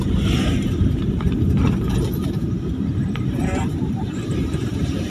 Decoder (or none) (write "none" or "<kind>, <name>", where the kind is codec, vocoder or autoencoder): vocoder, BigVGAN v2